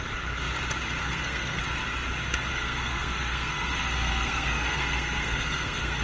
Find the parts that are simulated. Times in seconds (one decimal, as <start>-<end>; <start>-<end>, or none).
1.0-1.6; 2.5-6.0